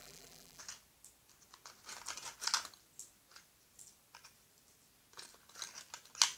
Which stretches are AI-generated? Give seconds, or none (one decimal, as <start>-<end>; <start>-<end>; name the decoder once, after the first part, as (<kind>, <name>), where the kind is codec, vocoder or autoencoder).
0.0-0.6 (vocoder, BigVGAN v2)